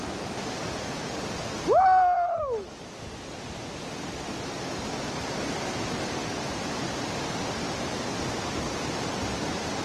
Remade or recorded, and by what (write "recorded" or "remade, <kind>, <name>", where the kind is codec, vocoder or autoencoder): recorded